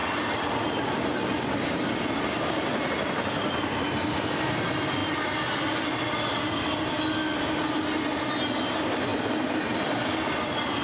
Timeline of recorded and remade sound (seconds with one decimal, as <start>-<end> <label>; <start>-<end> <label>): 0.0-1.0 remade; 1.0-5.0 recorded; 5.0-6.9 remade; 6.9-9.1 recorded; 9.1-10.2 remade; 10.2-10.8 recorded